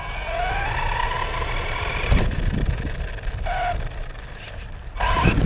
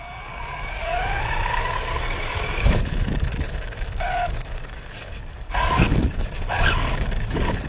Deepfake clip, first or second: second